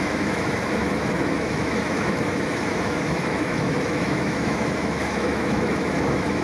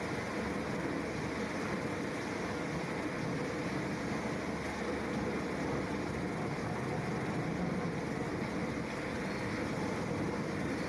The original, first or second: second